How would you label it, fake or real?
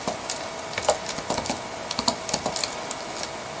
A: real